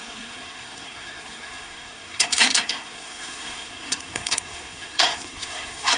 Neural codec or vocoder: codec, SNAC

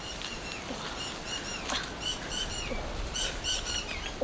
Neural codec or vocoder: none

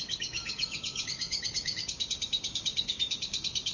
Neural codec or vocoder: codec, DAC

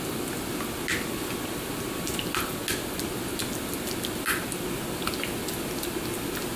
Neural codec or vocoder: none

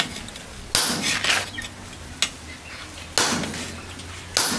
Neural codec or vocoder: none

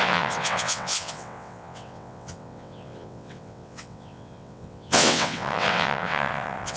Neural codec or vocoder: vocoder, WaveNeXt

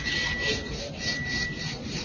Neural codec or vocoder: none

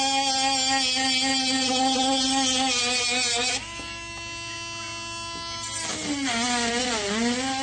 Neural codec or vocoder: none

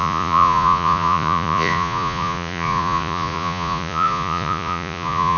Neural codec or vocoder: vocoder, Vocos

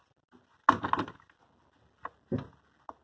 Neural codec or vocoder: none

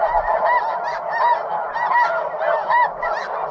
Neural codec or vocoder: none